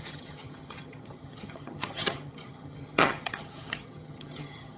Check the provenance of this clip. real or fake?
fake